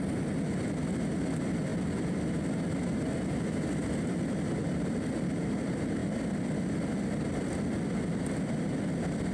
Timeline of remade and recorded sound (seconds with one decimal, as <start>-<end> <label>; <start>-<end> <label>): 0.0-9.3 recorded